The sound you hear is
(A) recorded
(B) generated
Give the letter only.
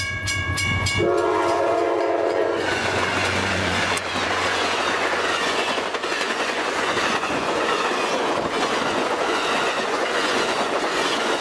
B